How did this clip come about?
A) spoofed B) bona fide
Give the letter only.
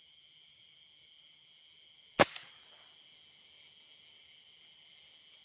B